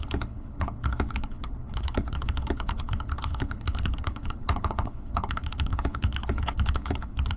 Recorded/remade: remade